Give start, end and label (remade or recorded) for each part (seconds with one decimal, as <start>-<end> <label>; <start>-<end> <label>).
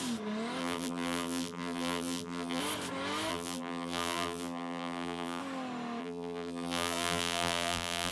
0.0-0.6 recorded; 0.6-2.6 remade; 2.6-3.3 recorded; 3.3-5.4 remade; 5.4-6.0 recorded; 6.0-8.1 remade